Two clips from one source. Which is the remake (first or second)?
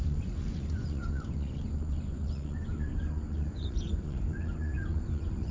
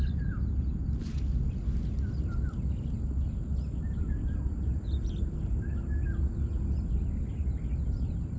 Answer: first